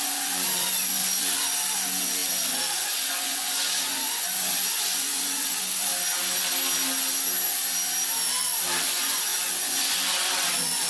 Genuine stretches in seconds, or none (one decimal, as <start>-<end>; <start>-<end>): 5.9-8.8